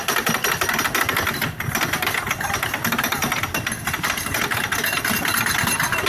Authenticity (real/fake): real